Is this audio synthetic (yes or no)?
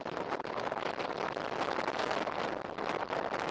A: no